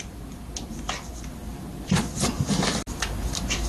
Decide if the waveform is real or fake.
real